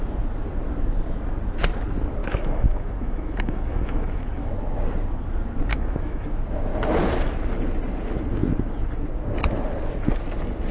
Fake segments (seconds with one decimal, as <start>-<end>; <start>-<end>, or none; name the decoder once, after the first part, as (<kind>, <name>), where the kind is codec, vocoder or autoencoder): 2.2-4.5 (autoencoder, DAC-VAE); 5.7-6.3